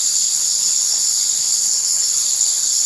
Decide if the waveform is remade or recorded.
remade